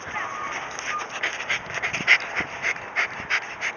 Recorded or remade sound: recorded